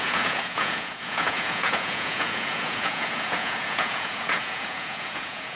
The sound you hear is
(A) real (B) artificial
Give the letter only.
B